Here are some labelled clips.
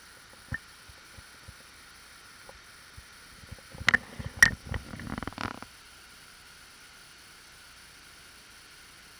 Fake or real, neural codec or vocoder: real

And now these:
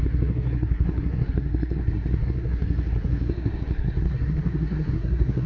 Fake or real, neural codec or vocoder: fake, codec, SNAC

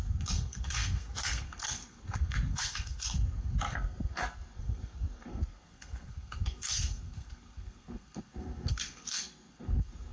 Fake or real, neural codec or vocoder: fake, codec, SNAC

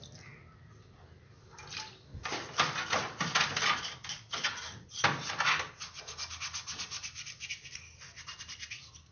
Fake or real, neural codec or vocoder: real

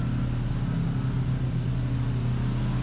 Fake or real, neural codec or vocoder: real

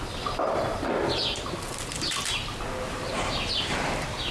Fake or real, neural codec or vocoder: real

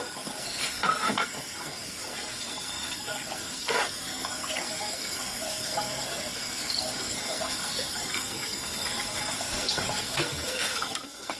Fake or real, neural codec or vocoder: fake, codec, SNAC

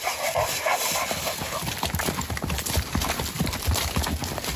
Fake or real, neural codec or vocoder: real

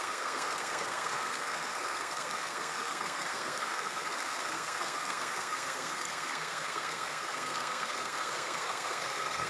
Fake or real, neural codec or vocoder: fake, codec, SNAC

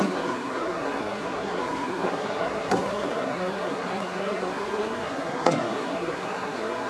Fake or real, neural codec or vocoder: fake, codec, SNAC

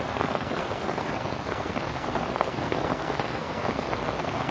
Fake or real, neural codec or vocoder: fake, codec, SNAC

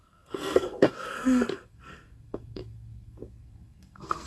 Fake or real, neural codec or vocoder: fake, codec, SNAC